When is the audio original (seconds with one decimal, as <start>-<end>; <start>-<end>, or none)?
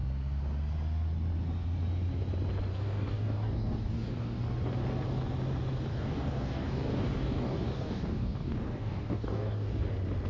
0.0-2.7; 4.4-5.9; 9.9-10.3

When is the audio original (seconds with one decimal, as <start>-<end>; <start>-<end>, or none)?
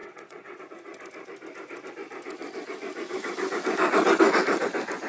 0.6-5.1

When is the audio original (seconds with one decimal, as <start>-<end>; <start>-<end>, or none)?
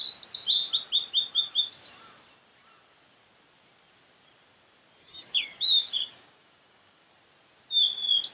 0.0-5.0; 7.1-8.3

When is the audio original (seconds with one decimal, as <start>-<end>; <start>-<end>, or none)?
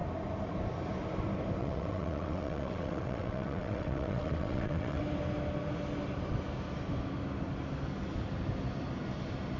0.0-1.6; 5.0-9.6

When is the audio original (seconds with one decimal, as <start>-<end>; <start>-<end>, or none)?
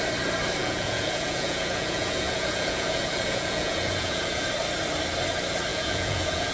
0.0-0.6; 4.5-5.7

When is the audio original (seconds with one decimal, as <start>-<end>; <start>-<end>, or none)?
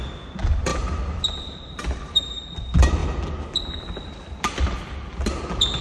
0.0-0.7; 2.4-5.8